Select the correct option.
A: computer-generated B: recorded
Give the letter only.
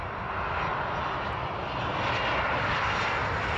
B